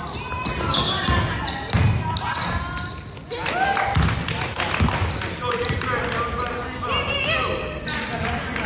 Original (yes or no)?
yes